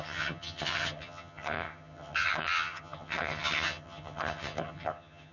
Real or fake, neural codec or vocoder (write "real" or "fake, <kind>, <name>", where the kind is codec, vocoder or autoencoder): fake, vocoder, HiFi-GAN